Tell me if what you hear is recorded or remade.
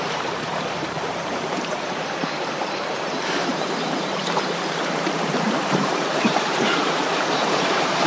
remade